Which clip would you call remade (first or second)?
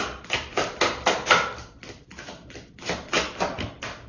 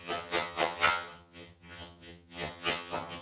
second